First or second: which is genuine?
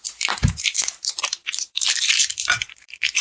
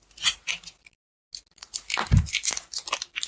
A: second